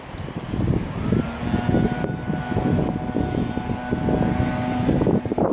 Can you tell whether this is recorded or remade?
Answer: recorded